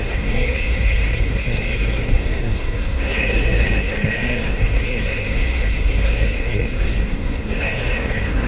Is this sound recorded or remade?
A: remade